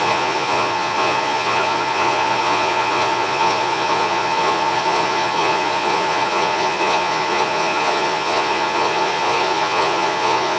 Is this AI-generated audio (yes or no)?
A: yes